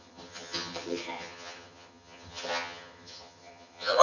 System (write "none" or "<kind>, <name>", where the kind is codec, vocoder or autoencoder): vocoder, HiFi-GAN